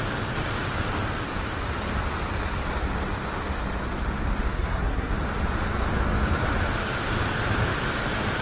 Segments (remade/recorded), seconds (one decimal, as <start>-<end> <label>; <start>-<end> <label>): 0.0-4.5 recorded; 4.5-5.1 remade; 5.1-8.4 recorded